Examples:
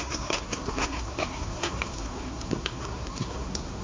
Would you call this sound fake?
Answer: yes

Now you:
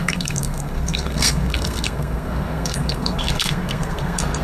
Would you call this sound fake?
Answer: yes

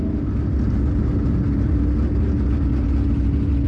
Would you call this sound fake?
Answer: no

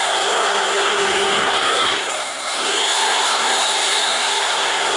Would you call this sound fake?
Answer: yes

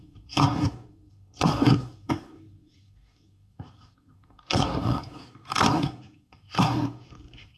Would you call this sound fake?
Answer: yes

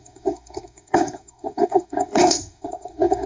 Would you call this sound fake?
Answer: yes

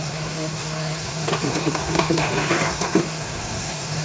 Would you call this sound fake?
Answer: yes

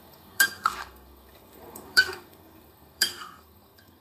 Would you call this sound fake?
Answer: yes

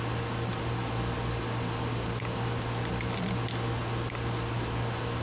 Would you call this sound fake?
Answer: no